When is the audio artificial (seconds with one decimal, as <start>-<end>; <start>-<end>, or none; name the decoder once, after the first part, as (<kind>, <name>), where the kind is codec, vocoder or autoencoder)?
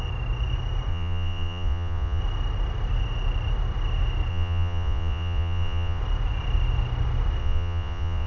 0.9-2.2 (vocoder, Vocos); 4.3-6.0; 7.4-8.3